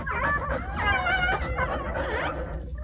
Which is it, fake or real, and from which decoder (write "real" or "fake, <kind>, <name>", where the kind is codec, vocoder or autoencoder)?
real